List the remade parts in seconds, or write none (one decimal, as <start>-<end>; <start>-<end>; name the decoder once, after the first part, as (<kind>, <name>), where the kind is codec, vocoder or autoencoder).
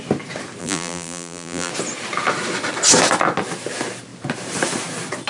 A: 0.6-1.7 (vocoder, BigVGAN v2)